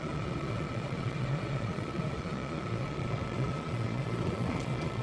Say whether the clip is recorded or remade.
remade